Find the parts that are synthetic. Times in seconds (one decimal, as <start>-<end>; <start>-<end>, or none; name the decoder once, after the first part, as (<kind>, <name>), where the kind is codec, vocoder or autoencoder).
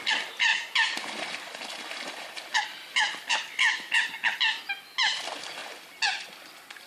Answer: 0.5-4.6 (vocoder, BigVGAN v2)